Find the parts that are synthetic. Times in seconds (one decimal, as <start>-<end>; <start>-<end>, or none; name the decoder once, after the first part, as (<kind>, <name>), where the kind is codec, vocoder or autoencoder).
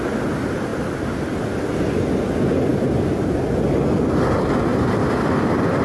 4.7-5.8 (vocoder, BigVGAN v2)